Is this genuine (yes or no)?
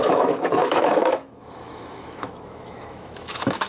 no